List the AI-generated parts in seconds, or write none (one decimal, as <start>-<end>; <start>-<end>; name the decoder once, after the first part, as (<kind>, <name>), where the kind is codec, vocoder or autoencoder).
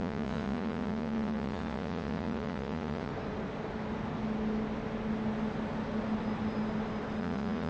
0.0-3.1 (vocoder, Vocos); 7.2-7.7